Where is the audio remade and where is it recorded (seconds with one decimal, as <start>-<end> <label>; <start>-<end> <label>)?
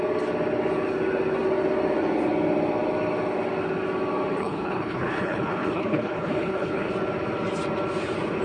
0.0-4.4 recorded; 4.4-6.9 remade; 6.9-8.4 recorded